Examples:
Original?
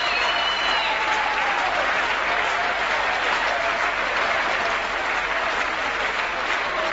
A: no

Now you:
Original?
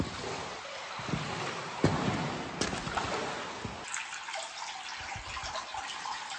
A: yes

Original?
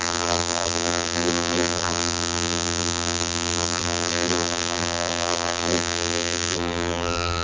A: no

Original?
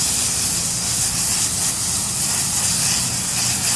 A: yes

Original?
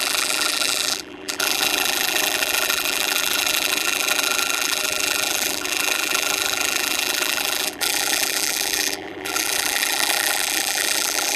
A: no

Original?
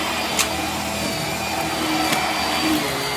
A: yes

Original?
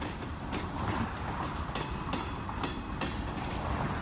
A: no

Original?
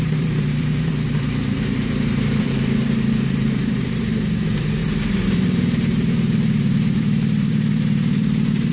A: no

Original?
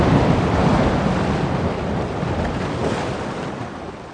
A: no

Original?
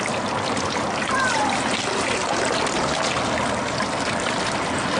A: yes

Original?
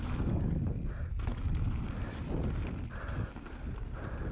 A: yes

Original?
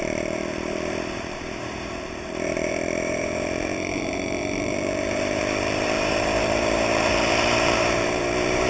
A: no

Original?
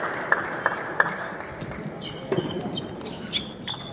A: yes